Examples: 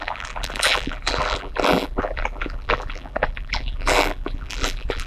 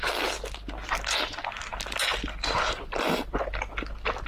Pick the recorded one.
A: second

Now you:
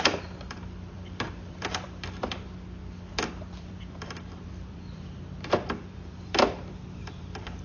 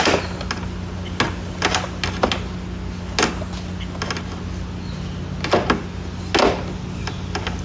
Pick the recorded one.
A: second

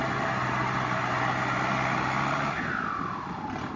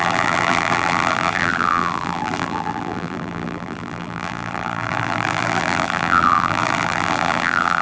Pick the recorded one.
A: first